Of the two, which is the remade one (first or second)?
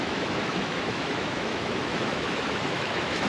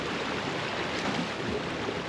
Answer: first